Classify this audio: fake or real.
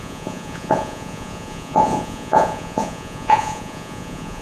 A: fake